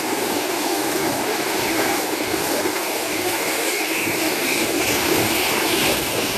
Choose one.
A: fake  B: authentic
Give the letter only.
A